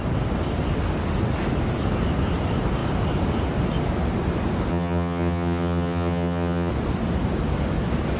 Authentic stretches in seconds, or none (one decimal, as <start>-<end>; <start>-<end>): 0.0-4.7; 6.7-8.2